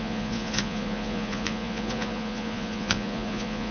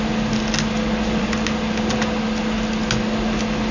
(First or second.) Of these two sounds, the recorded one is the second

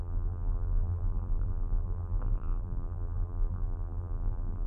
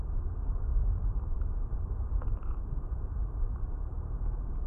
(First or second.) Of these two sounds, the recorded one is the second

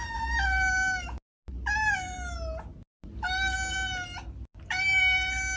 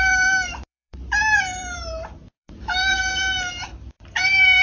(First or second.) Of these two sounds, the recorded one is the first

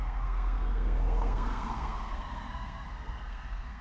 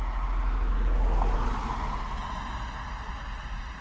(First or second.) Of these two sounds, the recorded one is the second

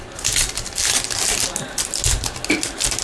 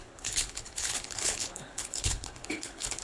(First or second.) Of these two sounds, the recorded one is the first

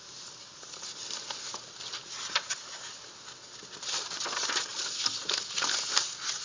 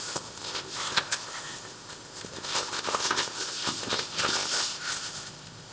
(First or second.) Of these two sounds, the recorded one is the first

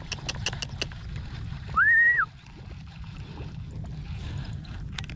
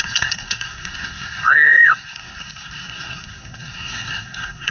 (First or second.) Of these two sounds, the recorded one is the first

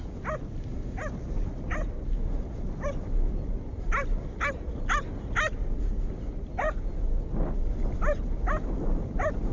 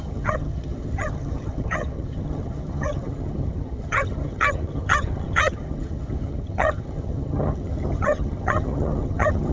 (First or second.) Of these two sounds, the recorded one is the first